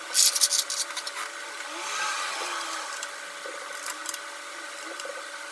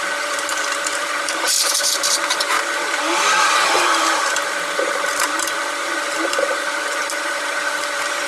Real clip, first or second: first